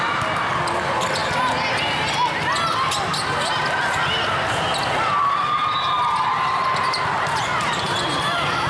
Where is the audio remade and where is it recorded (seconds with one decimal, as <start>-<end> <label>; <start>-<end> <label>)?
0.0-1.2 remade; 1.2-6.4 recorded; 6.4-8.7 remade